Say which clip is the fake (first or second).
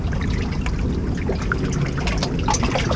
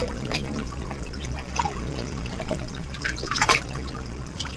second